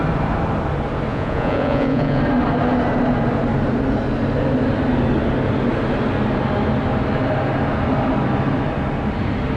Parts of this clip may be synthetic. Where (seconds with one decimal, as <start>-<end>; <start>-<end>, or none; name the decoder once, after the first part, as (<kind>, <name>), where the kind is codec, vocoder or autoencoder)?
1.1-2.2 (vocoder, Vocos)